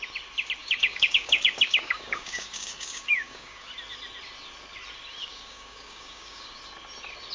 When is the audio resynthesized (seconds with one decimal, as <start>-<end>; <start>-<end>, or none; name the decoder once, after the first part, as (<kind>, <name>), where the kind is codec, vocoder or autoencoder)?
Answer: 0.6-3.7 (codec, DAC); 5.2-6.6